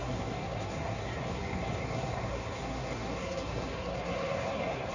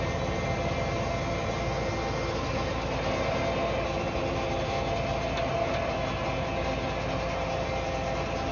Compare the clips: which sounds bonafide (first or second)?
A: second